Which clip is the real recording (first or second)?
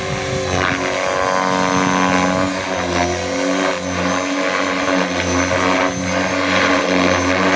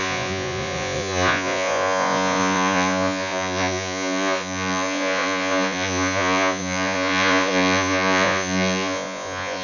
first